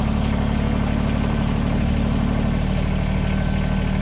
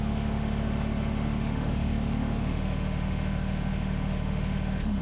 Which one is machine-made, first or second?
second